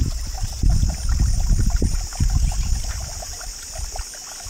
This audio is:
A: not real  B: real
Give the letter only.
B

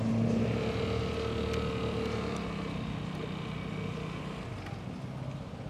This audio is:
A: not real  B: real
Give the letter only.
B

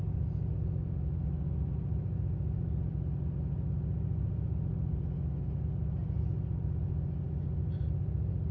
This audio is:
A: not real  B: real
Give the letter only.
B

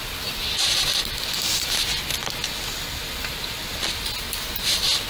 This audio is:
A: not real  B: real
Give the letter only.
B